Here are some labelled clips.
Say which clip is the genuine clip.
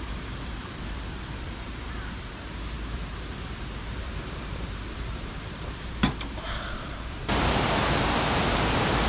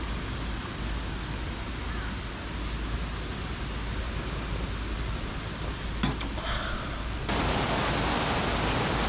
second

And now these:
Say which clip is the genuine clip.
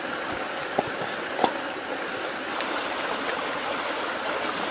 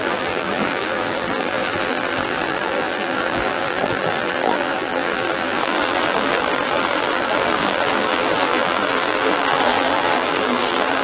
first